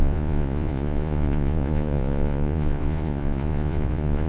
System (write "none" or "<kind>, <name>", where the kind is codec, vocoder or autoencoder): vocoder, Vocos